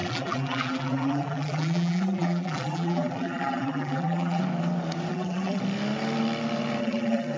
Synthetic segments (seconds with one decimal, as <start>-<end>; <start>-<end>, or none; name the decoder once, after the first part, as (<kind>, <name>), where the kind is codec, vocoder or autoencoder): 0.0-4.4 (vocoder, BigVGAN v2); 5.1-5.6; 6.8-7.4